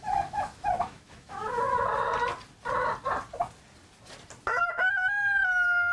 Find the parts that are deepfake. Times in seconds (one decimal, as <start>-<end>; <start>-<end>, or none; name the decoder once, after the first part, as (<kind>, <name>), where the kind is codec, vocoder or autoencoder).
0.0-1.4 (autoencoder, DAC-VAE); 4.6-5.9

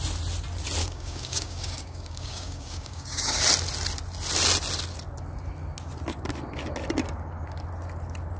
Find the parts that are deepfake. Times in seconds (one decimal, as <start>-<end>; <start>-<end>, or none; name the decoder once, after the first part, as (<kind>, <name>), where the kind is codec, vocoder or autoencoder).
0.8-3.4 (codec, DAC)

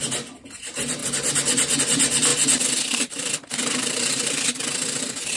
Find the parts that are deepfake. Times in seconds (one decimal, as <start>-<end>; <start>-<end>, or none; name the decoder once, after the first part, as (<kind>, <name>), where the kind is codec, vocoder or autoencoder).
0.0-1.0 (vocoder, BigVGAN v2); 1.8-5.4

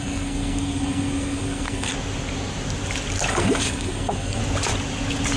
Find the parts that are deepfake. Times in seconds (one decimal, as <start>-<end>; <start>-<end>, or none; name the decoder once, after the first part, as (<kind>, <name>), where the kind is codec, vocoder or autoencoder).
0.0-1.9 (codec, SNAC); 3.3-4.4